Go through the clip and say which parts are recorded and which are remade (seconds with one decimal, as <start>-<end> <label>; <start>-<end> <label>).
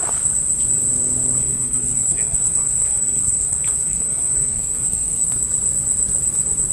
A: 0.0-1.4 recorded; 1.4-5.4 remade; 5.4-6.7 recorded